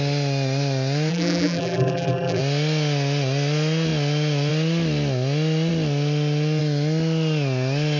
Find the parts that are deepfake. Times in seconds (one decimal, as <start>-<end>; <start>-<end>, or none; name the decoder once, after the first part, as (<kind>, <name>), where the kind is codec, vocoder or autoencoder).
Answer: 1.1-2.4 (vocoder, BigVGAN v2)